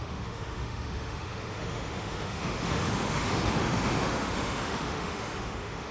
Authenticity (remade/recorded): remade